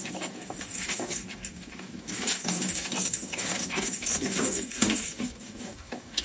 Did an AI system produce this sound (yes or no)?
yes